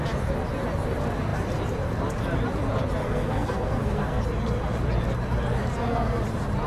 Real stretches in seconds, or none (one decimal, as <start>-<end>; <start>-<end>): 0.0-3.0; 4.2-6.7